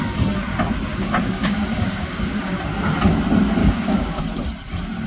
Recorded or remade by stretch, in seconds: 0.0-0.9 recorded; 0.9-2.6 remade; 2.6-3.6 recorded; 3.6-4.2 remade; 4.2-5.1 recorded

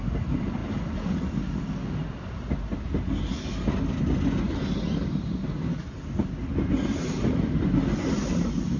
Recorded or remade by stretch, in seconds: 0.0-8.8 recorded

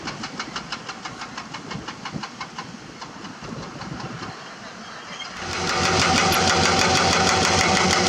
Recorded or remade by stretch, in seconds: 0.0-8.1 recorded

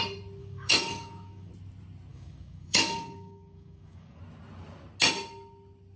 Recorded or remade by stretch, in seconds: 0.0-0.4 recorded; 0.4-1.5 remade; 1.5-2.1 recorded; 2.1-4.2 remade; 4.2-6.0 recorded

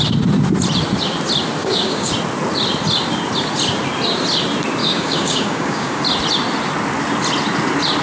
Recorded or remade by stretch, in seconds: 0.0-1.6 recorded; 1.6-2.1 remade; 2.1-4.8 recorded; 4.8-6.0 remade; 6.0-8.0 recorded